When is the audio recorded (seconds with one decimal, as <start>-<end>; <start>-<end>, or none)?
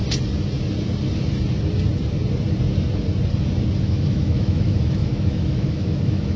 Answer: 0.0-3.8